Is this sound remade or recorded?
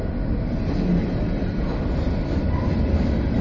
recorded